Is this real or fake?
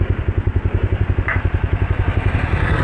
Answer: real